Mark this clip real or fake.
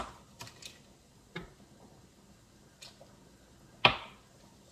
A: real